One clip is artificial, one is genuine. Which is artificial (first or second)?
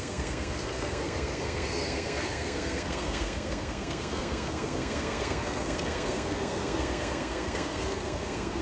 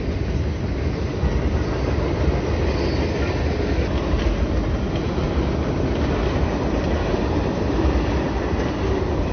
first